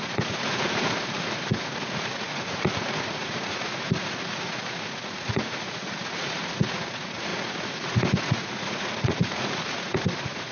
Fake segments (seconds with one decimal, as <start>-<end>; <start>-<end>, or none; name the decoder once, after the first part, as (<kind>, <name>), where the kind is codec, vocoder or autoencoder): 0.0-10.5 (vocoder, Vocos)